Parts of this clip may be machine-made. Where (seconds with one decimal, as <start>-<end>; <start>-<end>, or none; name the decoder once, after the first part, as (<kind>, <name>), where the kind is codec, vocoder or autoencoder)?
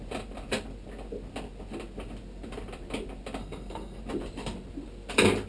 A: 3.4-4.0 (codec, SNAC)